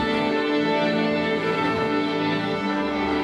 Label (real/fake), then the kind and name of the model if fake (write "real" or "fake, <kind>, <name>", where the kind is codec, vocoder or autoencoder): fake, codec, DAC